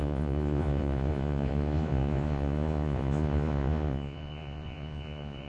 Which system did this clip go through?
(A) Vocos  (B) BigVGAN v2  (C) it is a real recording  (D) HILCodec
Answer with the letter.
A